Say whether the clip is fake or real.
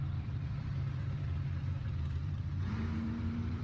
fake